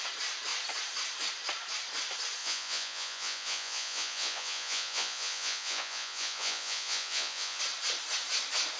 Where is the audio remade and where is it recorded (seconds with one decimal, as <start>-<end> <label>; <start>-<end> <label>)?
0.0-2.4 recorded; 2.4-7.6 remade; 7.6-8.8 recorded